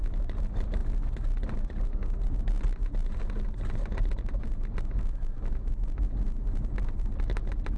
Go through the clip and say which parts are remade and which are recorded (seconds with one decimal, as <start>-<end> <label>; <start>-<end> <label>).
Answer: 0.0-7.8 recorded